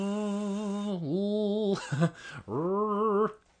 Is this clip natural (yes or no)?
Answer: yes